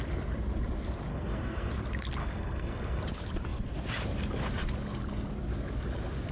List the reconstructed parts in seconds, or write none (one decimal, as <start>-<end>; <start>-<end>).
1.1-1.7; 2.2-3.0